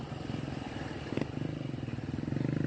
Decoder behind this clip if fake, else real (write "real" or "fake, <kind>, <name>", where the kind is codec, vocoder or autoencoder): real